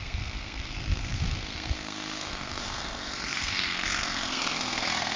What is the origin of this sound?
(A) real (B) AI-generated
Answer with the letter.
B